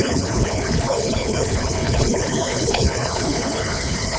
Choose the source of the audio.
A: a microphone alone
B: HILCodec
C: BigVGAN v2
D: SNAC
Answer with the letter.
B